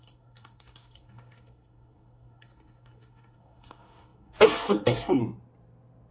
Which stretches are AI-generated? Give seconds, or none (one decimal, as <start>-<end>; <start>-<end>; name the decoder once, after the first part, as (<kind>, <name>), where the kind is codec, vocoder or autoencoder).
0.0-5.2 (codec, SNAC)